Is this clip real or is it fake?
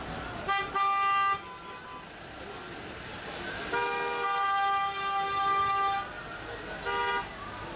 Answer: real